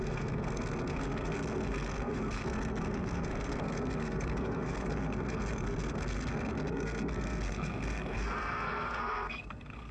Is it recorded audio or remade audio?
remade